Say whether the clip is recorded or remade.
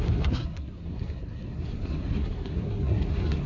remade